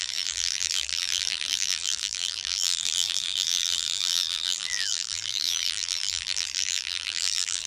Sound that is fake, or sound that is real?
fake